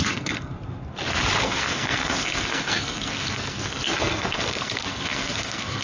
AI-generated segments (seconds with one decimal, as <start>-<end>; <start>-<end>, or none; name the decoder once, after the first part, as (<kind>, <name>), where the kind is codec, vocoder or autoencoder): 0.0-0.5 (codec, SNAC); 1.4-5.8